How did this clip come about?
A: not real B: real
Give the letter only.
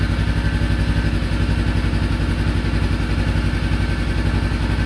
B